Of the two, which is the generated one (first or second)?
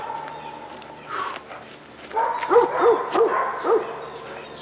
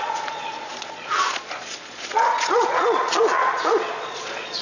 second